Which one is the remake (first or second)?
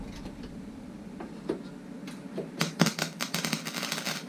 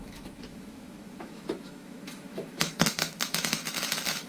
second